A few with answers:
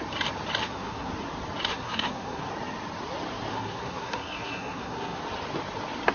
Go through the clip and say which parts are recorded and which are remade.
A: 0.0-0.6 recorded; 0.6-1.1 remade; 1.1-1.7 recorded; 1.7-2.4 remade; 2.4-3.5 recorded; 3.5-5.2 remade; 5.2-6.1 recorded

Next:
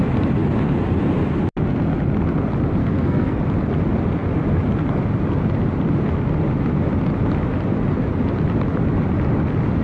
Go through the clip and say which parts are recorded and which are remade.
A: 0.0-2.8 recorded; 2.8-3.4 remade; 3.4-9.8 recorded

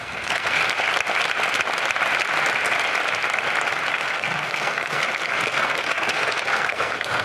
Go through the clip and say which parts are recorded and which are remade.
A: 0.0-0.6 remade; 0.6-3.9 recorded; 3.9-7.2 remade

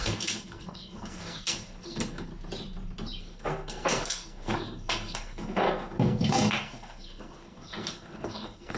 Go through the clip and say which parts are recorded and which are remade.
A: 0.0-2.3 remade; 2.3-3.2 recorded; 3.2-8.8 remade

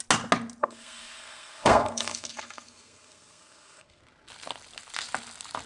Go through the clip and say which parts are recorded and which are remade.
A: 0.0-0.6 recorded; 0.6-4.0 remade; 4.0-5.7 recorded

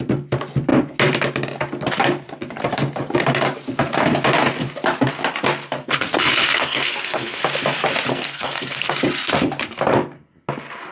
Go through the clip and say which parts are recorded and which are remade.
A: 0.0-5.8 recorded; 5.8-7.4 remade; 7.4-8.1 recorded; 8.1-8.9 remade; 8.9-10.9 recorded

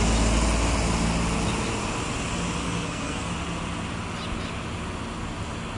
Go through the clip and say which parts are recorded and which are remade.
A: 0.0-2.6 recorded; 2.6-3.3 remade; 3.3-5.8 recorded

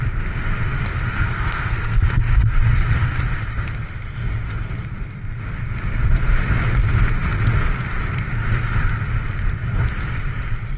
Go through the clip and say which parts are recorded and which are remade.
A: 0.0-1.1 recorded; 1.1-2.0 remade; 2.0-10.8 recorded